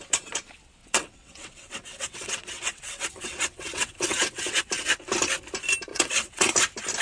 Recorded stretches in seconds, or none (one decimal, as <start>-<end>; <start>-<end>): 0.0-0.8; 4.7-5.9; 6.5-7.0